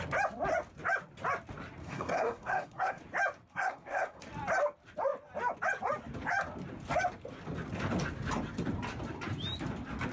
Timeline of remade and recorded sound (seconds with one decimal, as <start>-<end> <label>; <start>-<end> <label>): 0.0-1.8 recorded; 1.8-3.0 remade; 3.0-3.5 recorded; 3.5-4.2 remade; 4.2-10.1 recorded